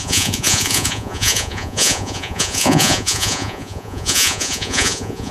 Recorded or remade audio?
remade